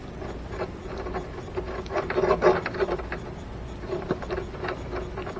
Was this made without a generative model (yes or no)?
yes